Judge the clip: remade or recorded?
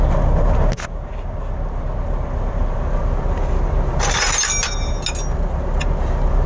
recorded